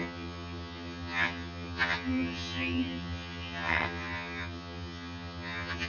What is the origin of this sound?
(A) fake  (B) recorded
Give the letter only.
A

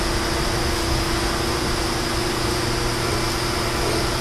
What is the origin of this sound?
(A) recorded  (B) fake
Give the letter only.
A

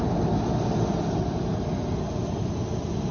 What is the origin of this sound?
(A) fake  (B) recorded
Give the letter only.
B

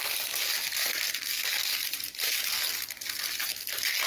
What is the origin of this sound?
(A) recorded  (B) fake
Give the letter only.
A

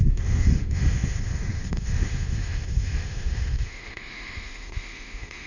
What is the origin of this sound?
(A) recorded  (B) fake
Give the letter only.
B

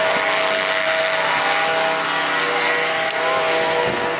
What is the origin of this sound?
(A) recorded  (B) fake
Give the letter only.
A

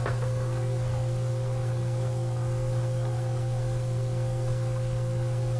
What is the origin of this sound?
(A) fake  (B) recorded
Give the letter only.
A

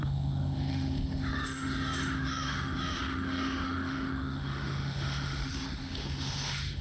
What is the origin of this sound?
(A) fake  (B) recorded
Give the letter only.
A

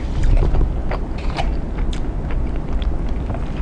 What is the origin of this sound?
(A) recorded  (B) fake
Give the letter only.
A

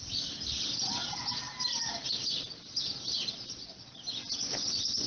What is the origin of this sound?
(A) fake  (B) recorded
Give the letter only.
B